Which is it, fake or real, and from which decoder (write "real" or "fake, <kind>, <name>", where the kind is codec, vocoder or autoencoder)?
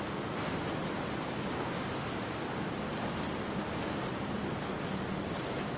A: real